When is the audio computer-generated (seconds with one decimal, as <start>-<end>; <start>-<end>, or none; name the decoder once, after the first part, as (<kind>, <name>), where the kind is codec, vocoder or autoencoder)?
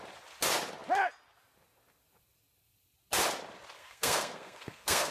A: 3.8-5.1 (codec, SNAC)